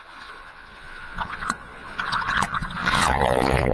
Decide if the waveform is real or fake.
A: fake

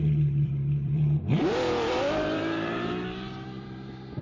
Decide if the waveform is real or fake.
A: fake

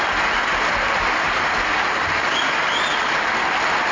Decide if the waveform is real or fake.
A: real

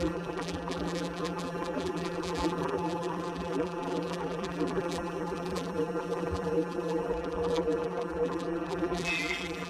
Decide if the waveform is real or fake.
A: fake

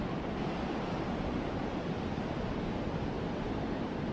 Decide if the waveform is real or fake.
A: real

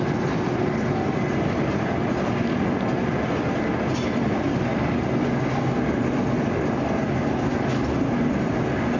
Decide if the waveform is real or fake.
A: real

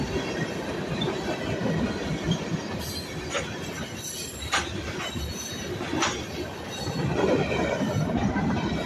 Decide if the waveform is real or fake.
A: fake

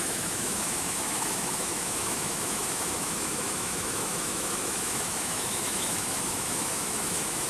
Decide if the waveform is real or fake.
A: fake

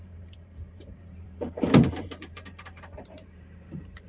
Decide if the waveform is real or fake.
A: fake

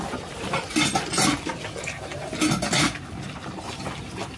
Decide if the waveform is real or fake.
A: real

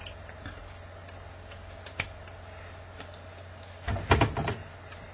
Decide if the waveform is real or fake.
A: real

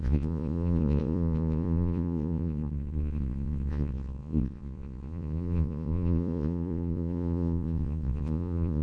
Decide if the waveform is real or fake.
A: fake